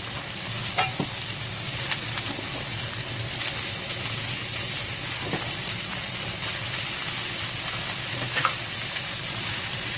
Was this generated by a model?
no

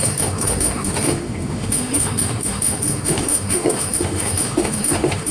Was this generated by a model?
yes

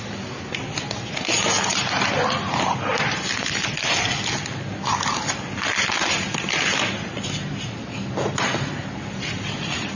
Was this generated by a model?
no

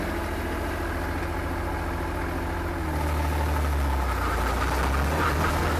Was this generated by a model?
no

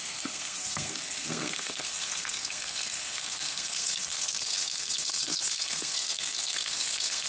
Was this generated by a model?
yes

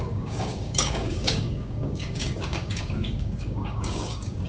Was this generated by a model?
yes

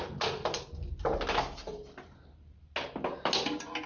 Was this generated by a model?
no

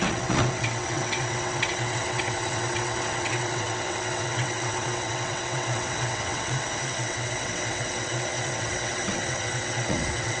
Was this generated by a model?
yes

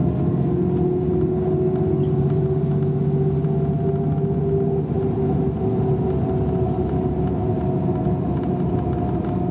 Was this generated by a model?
no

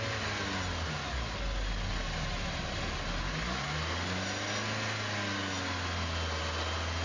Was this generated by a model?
no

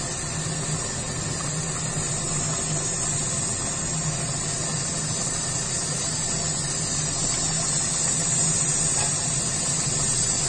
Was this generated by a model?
no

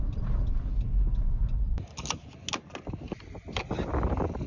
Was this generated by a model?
no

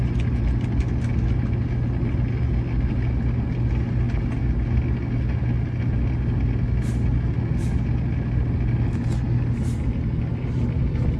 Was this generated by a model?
no